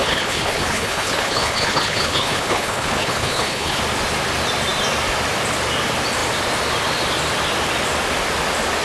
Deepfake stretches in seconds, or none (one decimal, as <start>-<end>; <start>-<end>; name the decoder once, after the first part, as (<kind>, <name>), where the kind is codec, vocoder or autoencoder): 0.0-3.8 (codec, HILCodec)